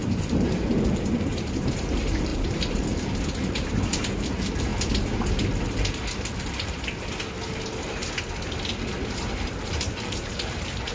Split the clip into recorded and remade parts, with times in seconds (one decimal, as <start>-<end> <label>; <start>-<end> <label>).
0.0-4.7 remade; 4.7-9.6 recorded; 9.6-10.9 remade